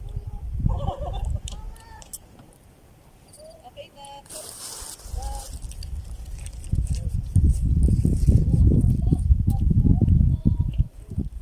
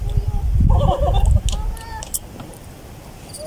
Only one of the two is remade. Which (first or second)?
first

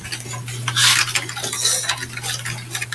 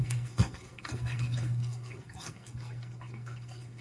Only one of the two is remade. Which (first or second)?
second